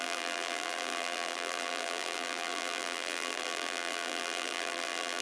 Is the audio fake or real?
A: fake